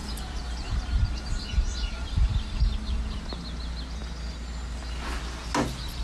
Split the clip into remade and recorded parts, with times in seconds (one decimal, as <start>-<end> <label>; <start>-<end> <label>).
0.0-3.2 remade; 3.2-6.0 recorded